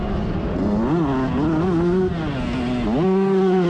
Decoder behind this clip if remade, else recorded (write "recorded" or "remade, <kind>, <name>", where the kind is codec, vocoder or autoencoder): recorded